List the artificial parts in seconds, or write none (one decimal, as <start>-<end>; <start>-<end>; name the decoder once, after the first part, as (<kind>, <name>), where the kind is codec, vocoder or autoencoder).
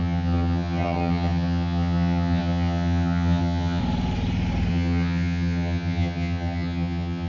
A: 0.0-3.8 (vocoder, HiFi-GAN); 4.7-7.3